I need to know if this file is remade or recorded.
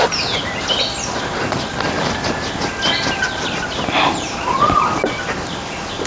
recorded